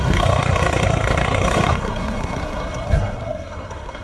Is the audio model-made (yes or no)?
yes